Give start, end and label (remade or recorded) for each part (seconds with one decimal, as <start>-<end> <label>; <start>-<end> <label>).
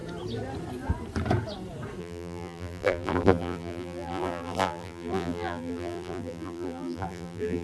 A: 0.0-2.0 recorded; 2.0-7.6 remade